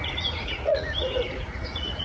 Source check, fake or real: fake